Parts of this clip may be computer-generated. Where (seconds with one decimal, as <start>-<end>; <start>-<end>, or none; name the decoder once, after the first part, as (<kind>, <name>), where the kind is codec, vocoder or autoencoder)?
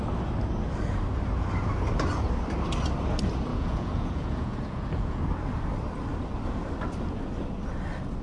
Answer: 3.5-5.2 (vocoder, Vocos)